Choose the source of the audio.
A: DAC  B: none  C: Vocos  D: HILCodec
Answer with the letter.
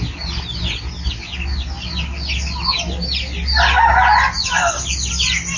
B